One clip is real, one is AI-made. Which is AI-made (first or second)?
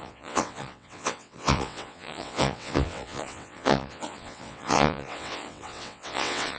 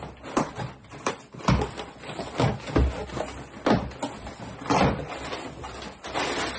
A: first